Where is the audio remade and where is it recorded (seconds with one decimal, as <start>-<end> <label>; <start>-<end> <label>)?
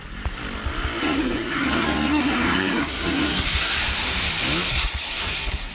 0.0-1.0 recorded; 1.0-3.8 remade; 3.8-4.7 recorded; 4.7-5.7 remade